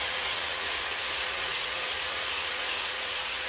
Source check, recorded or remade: remade